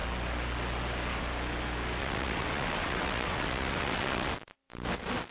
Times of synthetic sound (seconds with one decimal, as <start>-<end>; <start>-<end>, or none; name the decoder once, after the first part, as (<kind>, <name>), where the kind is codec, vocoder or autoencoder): 2.0-4.3 (vocoder, WaveNeXt)